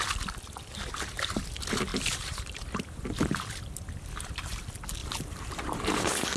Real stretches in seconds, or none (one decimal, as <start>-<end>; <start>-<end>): 0.0-1.9; 3.0-5.0